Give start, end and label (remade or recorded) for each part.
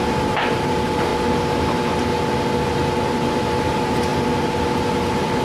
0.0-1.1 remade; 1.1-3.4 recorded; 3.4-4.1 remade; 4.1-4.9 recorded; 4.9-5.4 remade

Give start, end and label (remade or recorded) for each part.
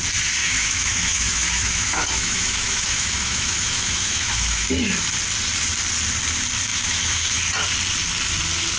0.0-0.4 recorded; 0.4-4.7 remade; 4.7-6.7 recorded; 6.7-7.4 remade; 7.4-8.8 recorded